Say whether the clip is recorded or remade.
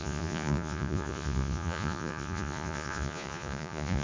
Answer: remade